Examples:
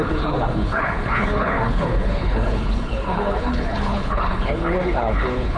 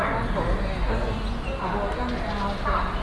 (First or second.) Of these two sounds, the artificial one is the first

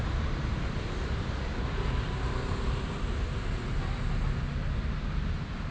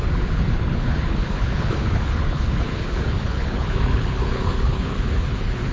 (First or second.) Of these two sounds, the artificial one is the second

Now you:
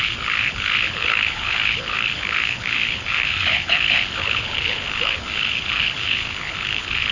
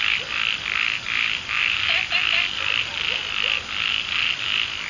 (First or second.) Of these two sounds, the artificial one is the first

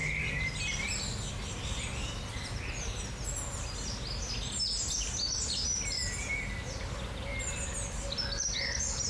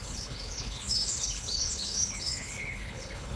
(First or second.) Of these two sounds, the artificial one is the second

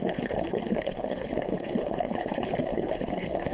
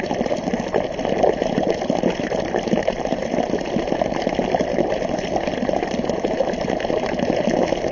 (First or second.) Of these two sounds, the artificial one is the first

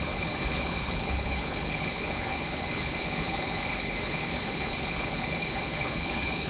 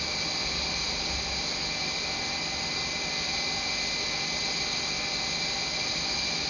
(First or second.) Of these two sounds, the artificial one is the first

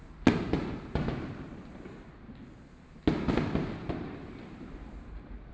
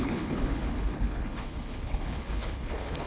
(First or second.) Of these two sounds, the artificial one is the second